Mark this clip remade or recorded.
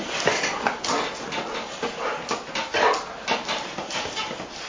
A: recorded